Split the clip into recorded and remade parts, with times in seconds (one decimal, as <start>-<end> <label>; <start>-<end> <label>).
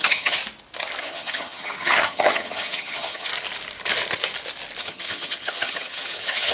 0.0-0.4 remade; 0.4-1.0 recorded; 1.0-3.3 remade; 3.3-4.8 recorded; 4.8-6.5 remade